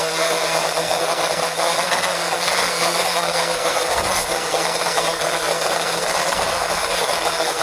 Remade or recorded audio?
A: remade